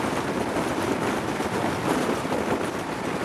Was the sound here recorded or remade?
remade